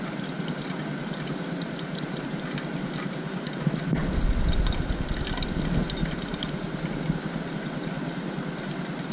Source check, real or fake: real